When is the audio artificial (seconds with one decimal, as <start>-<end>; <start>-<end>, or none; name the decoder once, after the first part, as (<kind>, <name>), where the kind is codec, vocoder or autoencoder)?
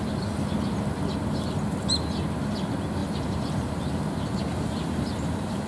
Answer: 3.0-5.7 (vocoder, BigVGAN v2)